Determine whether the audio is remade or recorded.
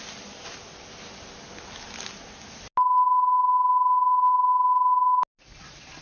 recorded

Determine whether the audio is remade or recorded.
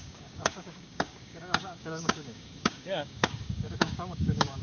remade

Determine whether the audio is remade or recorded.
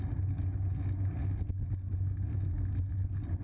recorded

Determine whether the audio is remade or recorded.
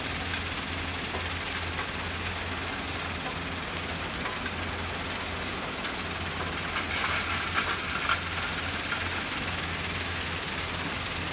recorded